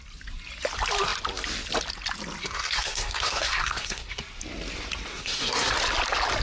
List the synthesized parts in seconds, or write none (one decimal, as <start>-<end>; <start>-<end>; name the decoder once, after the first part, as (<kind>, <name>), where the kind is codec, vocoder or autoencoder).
2.4-4.2 (codec, SNAC); 5.1-5.7